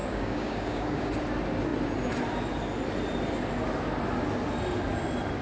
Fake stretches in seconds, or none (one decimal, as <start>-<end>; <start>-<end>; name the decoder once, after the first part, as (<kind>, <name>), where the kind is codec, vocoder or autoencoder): 0.0-1.1 (codec, DAC)